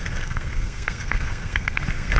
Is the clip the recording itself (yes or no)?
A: no